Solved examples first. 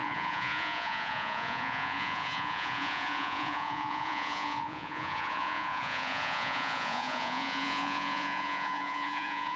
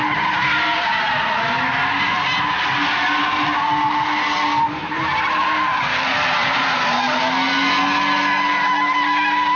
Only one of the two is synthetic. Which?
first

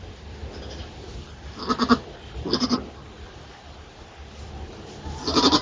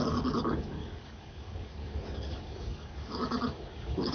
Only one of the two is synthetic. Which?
second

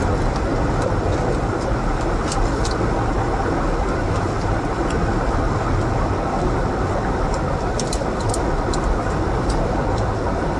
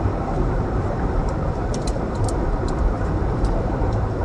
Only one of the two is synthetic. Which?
second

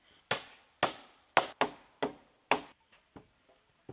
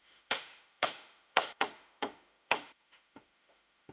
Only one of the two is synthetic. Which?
second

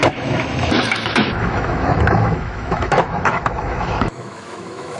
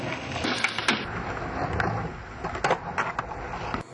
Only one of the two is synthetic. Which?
first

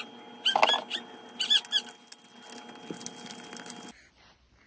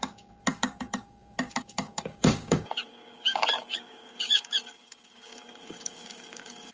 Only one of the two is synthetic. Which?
second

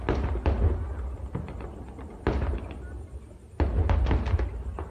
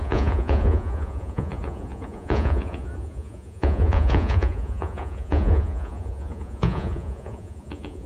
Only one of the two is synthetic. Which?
second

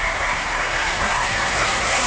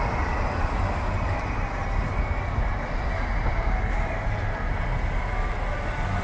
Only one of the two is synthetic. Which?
first